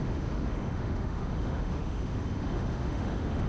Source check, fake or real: fake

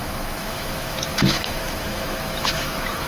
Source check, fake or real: fake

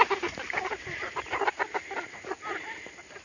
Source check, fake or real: real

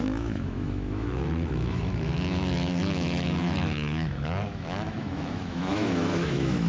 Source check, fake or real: fake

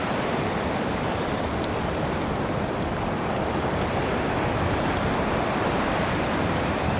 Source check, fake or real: real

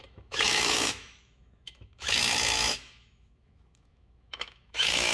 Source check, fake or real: fake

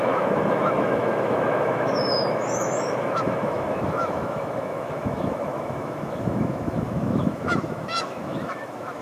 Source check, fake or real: fake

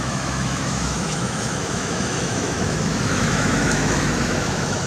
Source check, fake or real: fake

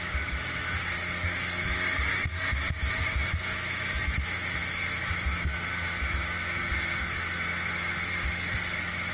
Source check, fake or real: fake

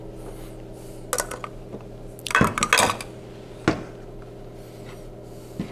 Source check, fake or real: real